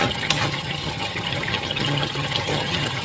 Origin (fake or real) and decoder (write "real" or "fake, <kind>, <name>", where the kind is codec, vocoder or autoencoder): fake, vocoder, HiFi-GAN